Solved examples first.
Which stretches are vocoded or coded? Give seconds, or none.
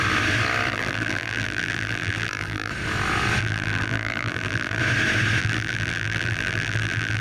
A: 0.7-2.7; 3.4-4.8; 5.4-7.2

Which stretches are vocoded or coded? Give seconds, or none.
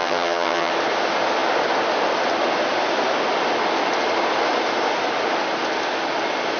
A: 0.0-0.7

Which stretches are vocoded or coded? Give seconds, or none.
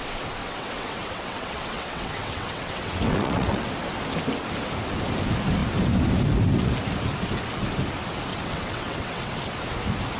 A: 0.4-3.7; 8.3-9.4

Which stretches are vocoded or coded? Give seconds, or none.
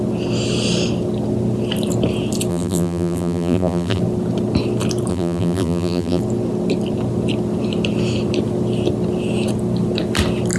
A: 2.5-4.0; 5.1-6.2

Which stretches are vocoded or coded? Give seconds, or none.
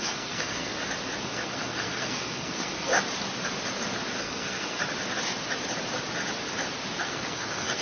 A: 0.0-0.7; 1.2-2.9; 4.2-4.8; 7.0-7.8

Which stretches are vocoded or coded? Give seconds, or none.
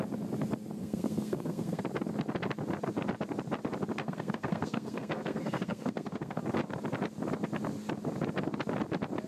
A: 0.8-1.8; 4.0-6.4